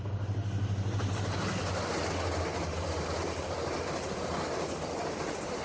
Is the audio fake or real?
real